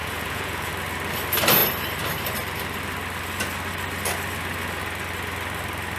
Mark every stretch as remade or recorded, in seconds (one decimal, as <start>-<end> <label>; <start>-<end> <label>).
0.0-0.7 remade; 0.7-6.0 recorded